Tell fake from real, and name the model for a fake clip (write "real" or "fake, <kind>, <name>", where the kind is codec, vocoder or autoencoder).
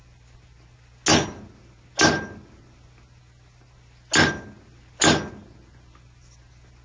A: real